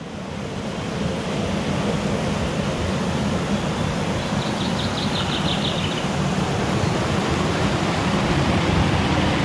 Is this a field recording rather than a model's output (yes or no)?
yes